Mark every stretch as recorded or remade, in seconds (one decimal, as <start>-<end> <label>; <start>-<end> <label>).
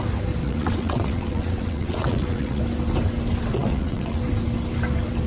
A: 0.0-0.4 recorded; 0.4-2.6 remade; 2.6-3.5 recorded; 3.5-4.2 remade; 4.2-5.3 recorded